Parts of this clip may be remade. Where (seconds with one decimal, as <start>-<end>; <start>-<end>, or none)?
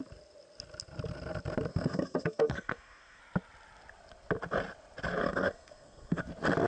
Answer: 1.7-3.2; 5.2-6.2